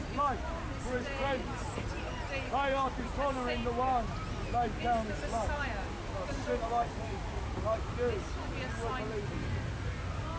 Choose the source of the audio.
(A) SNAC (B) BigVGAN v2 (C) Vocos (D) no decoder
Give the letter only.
D